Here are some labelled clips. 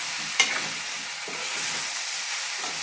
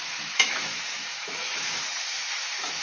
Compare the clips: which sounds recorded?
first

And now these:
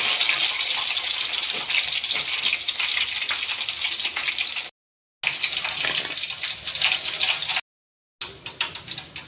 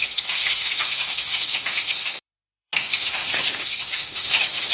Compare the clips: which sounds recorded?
first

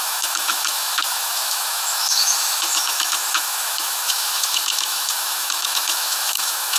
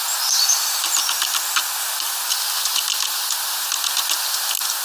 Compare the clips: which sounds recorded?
second